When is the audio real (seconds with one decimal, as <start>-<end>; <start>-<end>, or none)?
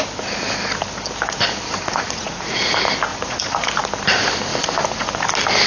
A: 0.0-1.9; 2.7-3.1; 3.7-4.5; 5.2-5.7